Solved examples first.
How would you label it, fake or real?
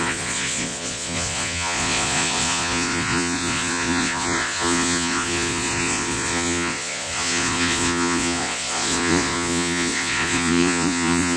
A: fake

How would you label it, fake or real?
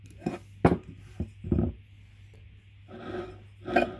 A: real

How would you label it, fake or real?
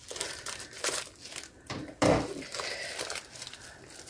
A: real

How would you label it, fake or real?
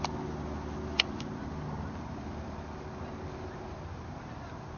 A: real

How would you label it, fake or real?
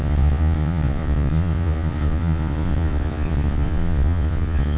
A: fake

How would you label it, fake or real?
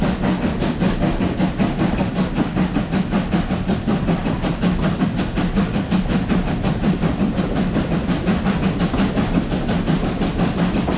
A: real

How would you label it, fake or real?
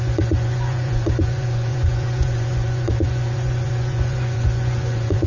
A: fake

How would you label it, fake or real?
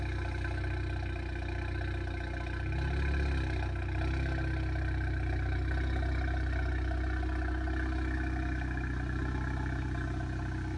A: real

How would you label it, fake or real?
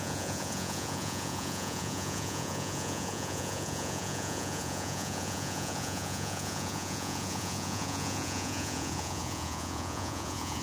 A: fake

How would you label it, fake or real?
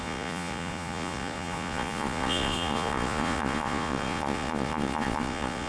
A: fake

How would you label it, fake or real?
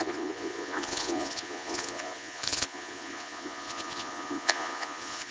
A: fake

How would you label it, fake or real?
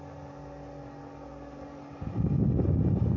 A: real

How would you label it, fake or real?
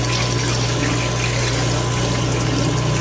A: real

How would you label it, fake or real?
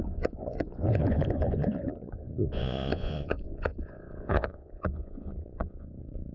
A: fake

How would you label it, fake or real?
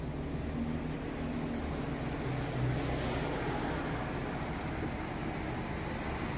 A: real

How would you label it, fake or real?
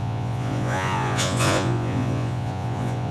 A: fake